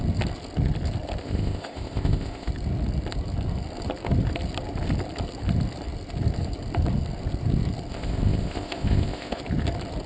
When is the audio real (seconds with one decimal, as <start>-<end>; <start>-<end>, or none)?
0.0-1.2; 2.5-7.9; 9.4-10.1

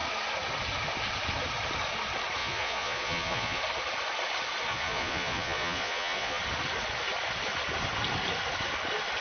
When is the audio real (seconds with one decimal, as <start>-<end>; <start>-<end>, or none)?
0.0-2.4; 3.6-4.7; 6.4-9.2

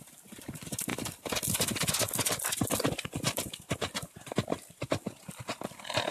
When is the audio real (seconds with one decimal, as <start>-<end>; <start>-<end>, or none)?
0.0-6.1

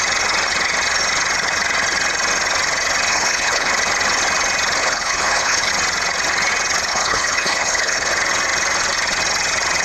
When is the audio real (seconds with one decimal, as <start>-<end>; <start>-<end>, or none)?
0.0-3.1; 3.7-4.8; 5.7-6.9; 8.1-9.8

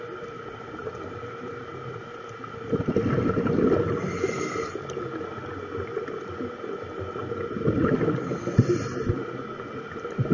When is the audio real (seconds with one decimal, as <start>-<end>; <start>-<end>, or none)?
0.0-10.3